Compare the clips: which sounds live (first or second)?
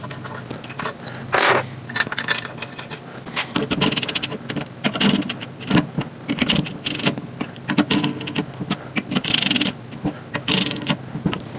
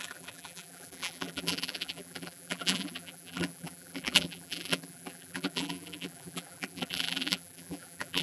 first